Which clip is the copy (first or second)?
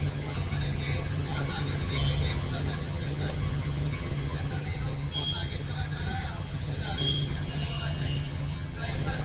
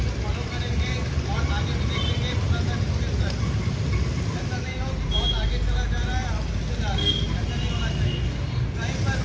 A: first